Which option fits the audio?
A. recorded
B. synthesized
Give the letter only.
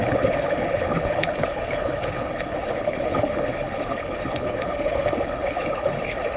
B